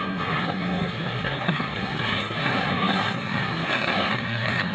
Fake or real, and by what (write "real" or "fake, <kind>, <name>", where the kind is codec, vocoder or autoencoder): fake, codec, SNAC